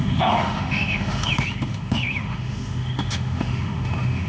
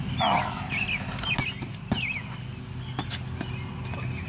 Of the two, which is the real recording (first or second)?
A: second